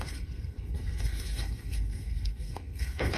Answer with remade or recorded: remade